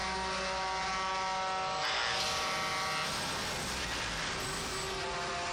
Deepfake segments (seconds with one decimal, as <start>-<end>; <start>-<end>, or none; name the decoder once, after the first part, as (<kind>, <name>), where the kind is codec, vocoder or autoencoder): none